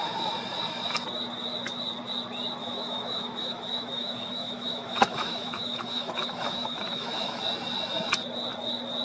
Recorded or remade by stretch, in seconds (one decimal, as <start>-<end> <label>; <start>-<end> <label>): 0.0-2.6 recorded; 2.6-7.4 remade; 7.4-9.0 recorded